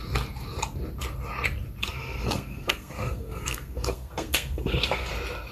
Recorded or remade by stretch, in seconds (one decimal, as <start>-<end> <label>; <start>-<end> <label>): 0.0-1.8 recorded; 1.8-5.1 remade; 5.1-5.5 recorded